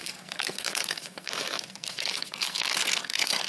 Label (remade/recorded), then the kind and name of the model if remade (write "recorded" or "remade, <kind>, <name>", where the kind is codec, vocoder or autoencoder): remade, codec, SNAC